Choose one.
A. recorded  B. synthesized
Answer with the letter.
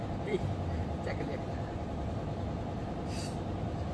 B